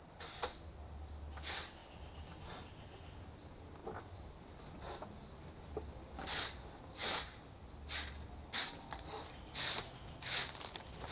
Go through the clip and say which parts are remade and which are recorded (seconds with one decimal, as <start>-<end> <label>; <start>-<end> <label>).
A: 0.0-3.8 recorded; 3.8-4.4 remade; 4.4-11.1 recorded